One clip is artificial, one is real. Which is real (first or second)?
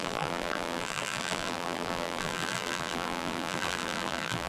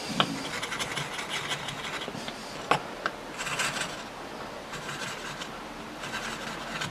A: second